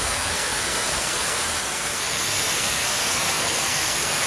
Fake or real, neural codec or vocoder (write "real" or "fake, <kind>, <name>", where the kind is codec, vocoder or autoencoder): fake, codec, SNAC